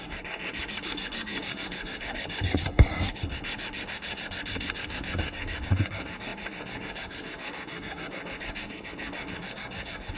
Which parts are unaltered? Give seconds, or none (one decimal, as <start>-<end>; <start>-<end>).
none